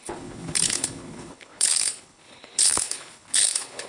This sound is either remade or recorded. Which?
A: remade